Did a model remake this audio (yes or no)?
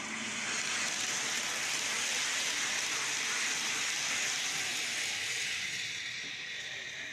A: no